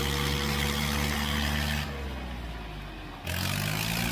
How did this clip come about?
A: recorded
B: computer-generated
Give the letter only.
A